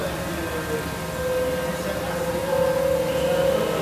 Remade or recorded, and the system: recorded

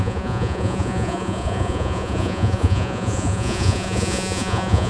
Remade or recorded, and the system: remade, vocoder, Vocos